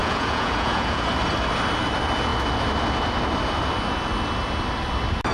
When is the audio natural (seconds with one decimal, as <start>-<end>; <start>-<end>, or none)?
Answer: 1.1-5.3